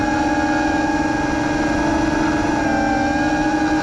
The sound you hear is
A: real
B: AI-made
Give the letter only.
A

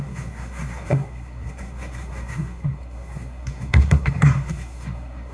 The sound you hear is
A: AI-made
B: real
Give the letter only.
A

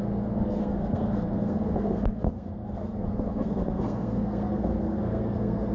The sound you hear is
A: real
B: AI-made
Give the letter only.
B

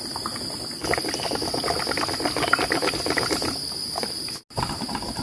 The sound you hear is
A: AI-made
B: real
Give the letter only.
B